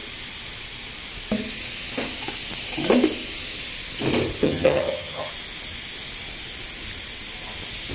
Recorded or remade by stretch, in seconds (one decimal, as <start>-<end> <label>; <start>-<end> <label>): 0.0-4.4 recorded; 4.4-5.3 remade; 5.3-7.9 recorded